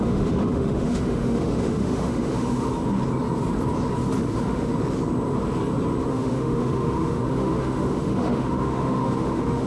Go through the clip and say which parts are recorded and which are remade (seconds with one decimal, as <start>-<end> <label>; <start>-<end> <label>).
0.0-2.7 remade; 2.7-4.3 recorded; 4.3-4.7 remade; 4.7-6.1 recorded; 6.1-9.7 remade